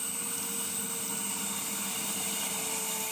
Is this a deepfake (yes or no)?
no